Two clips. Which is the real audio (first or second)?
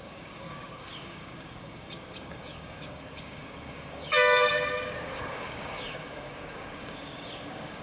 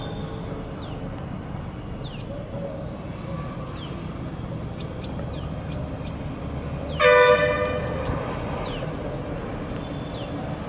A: second